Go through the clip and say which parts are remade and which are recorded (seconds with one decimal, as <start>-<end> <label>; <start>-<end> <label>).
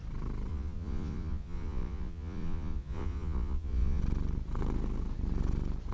0.0-0.5 recorded; 0.5-4.0 remade; 4.0-5.9 recorded